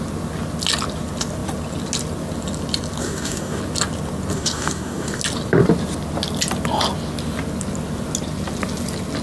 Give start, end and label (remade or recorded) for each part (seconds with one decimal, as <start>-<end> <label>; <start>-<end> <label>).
0.0-3.0 recorded; 3.0-3.6 remade; 3.6-4.3 recorded; 4.3-5.2 remade; 5.2-9.2 recorded